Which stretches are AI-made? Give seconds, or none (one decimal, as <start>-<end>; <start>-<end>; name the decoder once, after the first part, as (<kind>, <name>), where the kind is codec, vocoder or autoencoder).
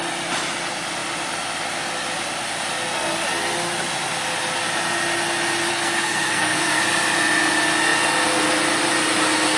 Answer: 5.7-6.8 (codec, SNAC)